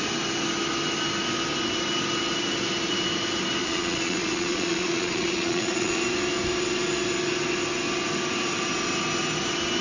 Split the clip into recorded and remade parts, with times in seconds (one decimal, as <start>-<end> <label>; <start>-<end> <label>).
0.0-3.6 recorded; 3.6-6.0 remade; 6.0-9.8 recorded